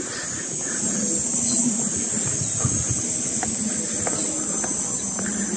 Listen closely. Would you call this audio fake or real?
real